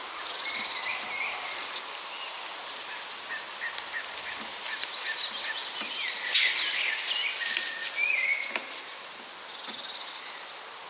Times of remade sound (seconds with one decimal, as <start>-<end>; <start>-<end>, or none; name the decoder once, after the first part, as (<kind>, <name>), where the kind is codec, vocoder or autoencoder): none